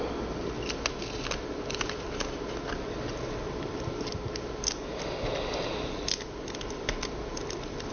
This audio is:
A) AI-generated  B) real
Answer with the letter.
B